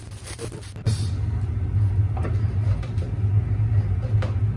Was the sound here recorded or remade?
recorded